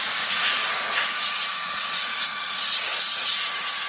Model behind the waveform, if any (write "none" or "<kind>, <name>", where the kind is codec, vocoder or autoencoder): vocoder, Vocos